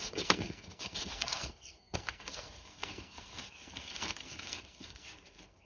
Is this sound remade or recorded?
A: remade